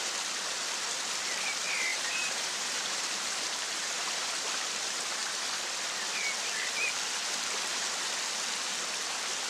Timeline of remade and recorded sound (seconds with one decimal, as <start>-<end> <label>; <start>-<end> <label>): 0.0-1.9 recorded; 1.9-4.4 remade; 4.4-9.5 recorded

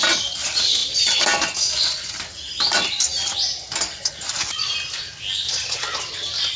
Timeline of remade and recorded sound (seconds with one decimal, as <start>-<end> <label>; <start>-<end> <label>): 0.0-6.6 recorded

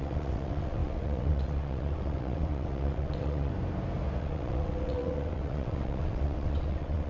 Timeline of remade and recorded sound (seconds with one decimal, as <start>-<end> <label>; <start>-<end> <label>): 0.0-3.5 remade; 3.5-4.2 recorded; 4.2-7.1 remade

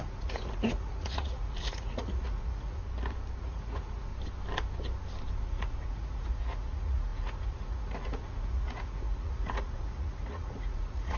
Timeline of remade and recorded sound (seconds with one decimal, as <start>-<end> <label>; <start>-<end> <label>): 0.0-2.8 remade; 2.8-3.4 recorded; 3.4-4.1 remade; 4.1-5.3 recorded; 5.3-11.2 remade

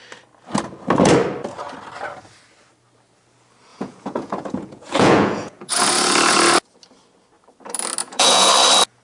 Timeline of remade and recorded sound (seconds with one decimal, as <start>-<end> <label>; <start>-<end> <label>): 0.0-3.7 recorded; 3.7-5.8 remade; 5.8-8.0 recorded; 8.0-8.5 remade; 8.5-9.0 recorded

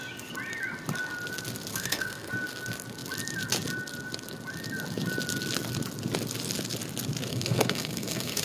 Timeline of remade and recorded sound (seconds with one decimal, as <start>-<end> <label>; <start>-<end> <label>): 0.0-1.7 recorded; 1.7-2.3 remade; 2.3-7.3 recorded; 7.3-8.4 remade

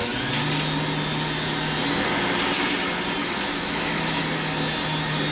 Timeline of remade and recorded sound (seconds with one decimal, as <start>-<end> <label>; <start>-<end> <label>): 0.0-3.2 recorded; 3.2-4.2 remade; 4.2-5.3 recorded

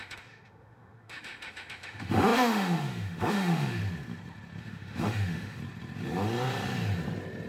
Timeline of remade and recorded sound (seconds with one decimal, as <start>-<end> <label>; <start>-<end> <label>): 0.0-3.8 remade; 3.8-4.6 recorded; 4.6-5.6 remade; 5.6-7.5 recorded